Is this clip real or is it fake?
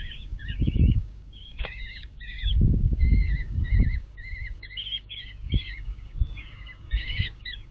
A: fake